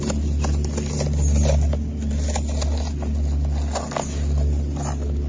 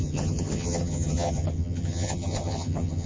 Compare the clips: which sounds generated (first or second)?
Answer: second